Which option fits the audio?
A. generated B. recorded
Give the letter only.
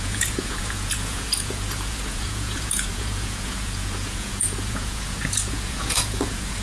A